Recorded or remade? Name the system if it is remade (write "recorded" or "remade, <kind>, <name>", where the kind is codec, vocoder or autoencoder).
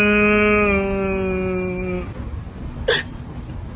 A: recorded